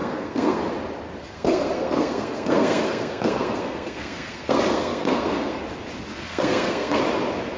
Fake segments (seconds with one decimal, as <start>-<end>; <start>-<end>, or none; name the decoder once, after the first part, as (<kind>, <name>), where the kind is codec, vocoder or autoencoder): 0.0-0.6 (codec, SNAC); 1.2-5.6; 6.1-7.0